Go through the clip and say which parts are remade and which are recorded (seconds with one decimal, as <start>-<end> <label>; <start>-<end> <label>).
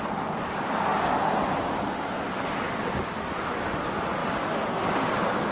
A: 0.0-5.5 recorded